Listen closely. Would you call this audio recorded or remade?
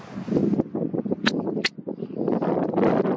recorded